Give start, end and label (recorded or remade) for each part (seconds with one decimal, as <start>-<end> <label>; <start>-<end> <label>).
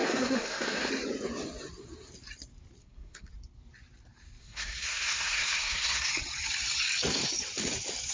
0.0-0.9 remade; 0.9-2.8 recorded; 2.8-3.3 remade; 3.3-4.4 recorded; 4.4-6.1 remade; 6.1-8.1 recorded